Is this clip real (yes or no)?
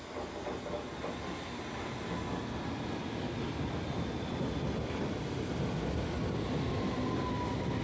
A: yes